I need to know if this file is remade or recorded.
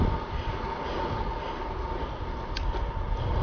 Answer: recorded